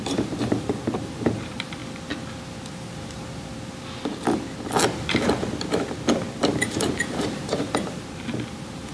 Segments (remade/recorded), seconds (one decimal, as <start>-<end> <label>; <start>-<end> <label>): 0.0-1.8 remade; 1.8-2.7 recorded; 2.7-3.5 remade; 3.5-6.4 recorded; 6.4-8.9 remade